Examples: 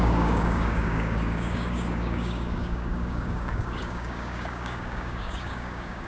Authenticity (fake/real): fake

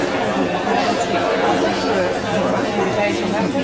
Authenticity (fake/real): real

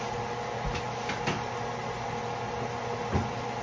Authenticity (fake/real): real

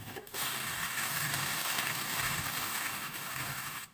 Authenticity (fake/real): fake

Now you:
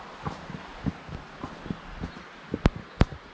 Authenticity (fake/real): real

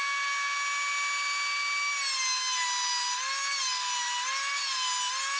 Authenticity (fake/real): real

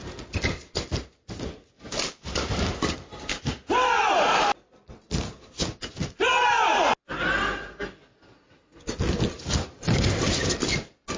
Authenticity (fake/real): real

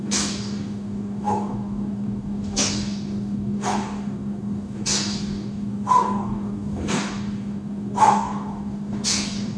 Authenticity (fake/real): fake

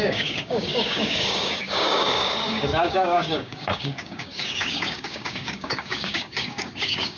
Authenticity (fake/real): fake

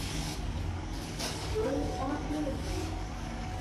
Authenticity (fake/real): fake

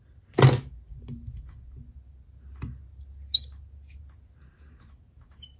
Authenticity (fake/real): real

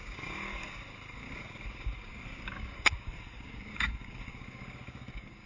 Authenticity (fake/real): fake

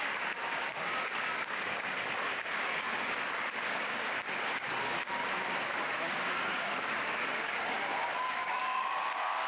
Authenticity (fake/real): fake